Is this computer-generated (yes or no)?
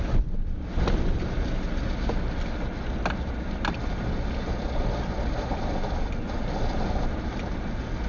no